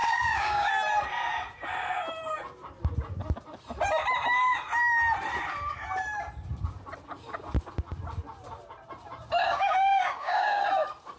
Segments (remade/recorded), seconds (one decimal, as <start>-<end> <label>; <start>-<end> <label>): 0.0-0.7 remade; 0.7-9.4 recorded; 9.4-10.6 remade; 10.6-11.2 recorded